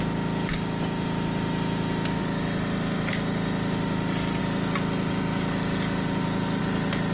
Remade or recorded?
recorded